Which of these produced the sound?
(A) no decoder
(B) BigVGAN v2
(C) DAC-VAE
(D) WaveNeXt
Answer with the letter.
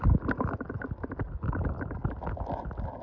A